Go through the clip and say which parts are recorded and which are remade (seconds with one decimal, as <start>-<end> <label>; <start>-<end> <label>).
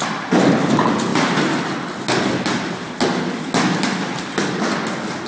0.0-5.3 recorded